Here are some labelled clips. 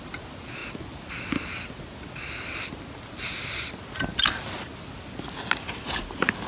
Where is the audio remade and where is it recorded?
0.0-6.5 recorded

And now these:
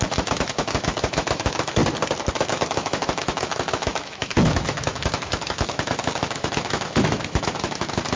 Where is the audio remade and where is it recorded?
0.0-1.8 remade; 1.8-2.3 recorded; 2.3-8.2 remade

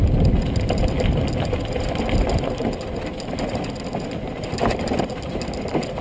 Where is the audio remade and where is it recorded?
0.0-6.0 recorded

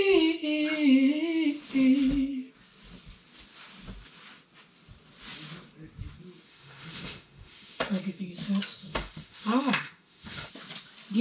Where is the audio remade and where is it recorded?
0.0-6.5 recorded; 6.5-8.2 remade; 8.2-8.8 recorded; 8.8-10.5 remade; 10.5-11.2 recorded

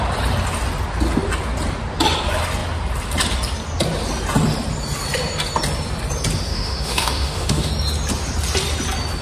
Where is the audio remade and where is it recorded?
0.0-6.5 recorded; 6.5-7.7 remade; 7.7-9.2 recorded

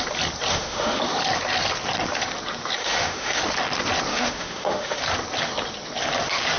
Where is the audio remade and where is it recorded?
0.0-0.5 recorded; 0.5-1.0 remade; 1.0-2.8 recorded; 2.8-3.4 remade; 3.4-4.1 recorded; 4.1-5.0 remade; 5.0-6.6 recorded

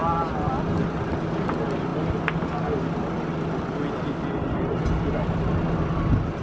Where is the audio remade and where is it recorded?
0.0-6.4 recorded

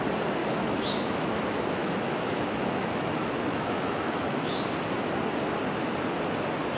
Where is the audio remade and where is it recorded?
0.0-0.4 recorded; 0.4-1.4 remade; 1.4-1.8 recorded; 1.8-4.6 remade; 4.6-6.8 recorded